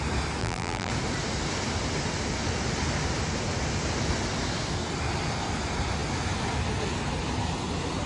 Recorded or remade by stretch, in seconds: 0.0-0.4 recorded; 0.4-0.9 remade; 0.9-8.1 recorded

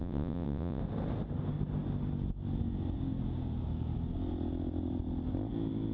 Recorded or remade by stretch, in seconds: 0.0-0.8 remade; 0.8-5.9 recorded

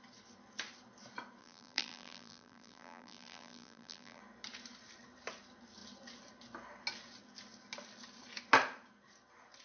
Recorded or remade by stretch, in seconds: 0.0-1.4 recorded; 1.4-4.2 remade; 4.2-9.6 recorded

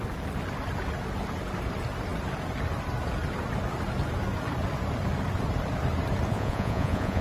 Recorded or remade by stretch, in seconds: 0.0-6.3 recorded; 6.3-7.2 remade

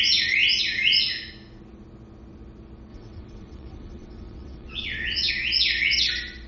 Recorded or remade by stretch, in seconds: 0.0-2.9 recorded; 2.9-5.3 remade; 5.3-6.5 recorded

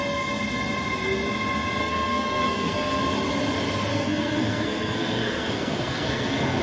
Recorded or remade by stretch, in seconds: 0.0-1.8 recorded; 1.8-3.0 remade; 3.0-3.9 recorded; 3.9-6.6 remade

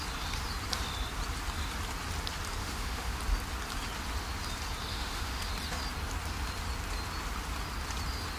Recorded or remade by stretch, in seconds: 0.0-2.6 recorded; 2.6-3.2 remade; 3.2-4.9 recorded; 4.9-5.4 remade; 5.4-8.4 recorded